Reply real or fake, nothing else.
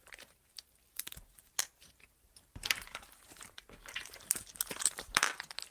fake